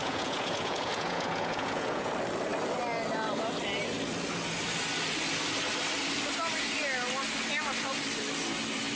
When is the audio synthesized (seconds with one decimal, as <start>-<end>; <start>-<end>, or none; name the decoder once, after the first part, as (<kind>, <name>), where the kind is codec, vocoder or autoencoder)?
0.0-2.1 (vocoder, Vocos)